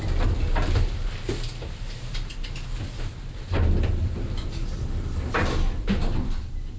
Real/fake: real